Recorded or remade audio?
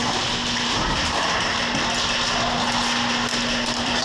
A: recorded